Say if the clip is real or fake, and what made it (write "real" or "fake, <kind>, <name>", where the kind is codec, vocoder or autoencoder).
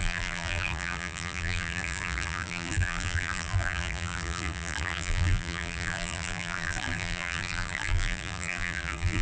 fake, vocoder, BigVGAN v2